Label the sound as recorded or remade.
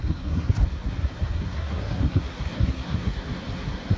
remade